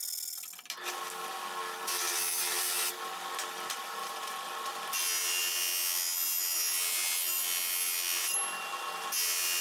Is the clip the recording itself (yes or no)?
yes